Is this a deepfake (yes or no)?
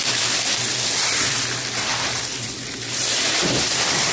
yes